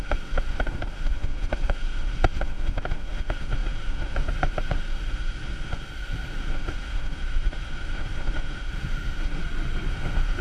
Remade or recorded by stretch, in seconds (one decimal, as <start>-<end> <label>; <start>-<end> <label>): 0.0-9.4 remade; 9.4-9.9 recorded; 9.9-10.4 remade